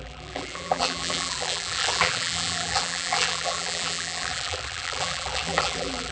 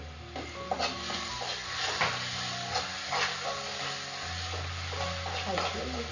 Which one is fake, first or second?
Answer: first